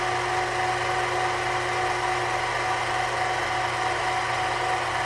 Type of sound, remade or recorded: recorded